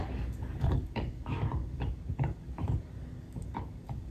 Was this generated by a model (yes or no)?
yes